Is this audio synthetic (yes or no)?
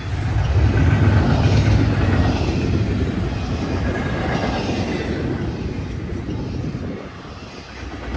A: no